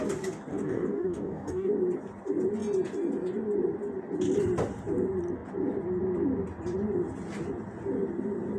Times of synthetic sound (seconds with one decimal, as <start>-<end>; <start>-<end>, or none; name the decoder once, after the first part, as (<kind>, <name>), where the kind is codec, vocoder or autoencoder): 0.5-1.7 (codec, DAC)